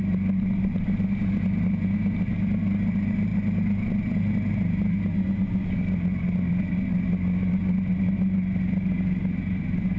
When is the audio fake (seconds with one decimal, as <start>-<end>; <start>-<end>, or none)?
none